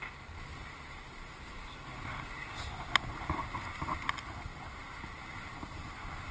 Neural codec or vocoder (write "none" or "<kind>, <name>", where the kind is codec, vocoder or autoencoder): none